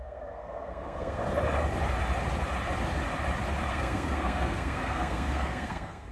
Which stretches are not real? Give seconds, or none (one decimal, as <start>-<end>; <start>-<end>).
0.0-1.2; 3.7-6.1